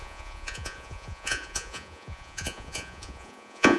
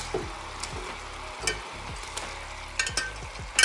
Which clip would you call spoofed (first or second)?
first